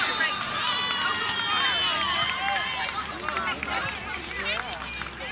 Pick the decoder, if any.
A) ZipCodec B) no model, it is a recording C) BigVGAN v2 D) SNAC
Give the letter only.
B